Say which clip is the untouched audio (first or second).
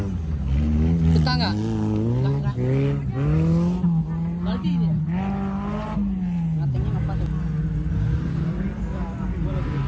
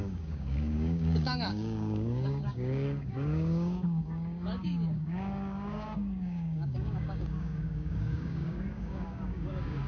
first